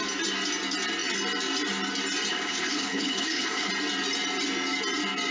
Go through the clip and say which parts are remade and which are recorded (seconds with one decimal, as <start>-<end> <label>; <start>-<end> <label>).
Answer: 0.0-2.3 recorded; 2.3-3.7 remade; 3.7-5.3 recorded